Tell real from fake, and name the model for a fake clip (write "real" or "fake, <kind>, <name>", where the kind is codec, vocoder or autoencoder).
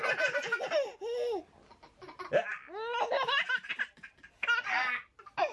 real